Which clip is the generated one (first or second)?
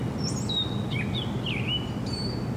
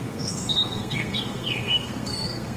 second